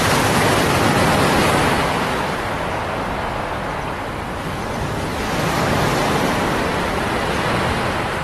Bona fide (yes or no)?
yes